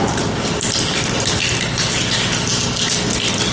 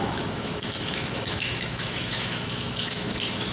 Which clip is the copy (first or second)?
second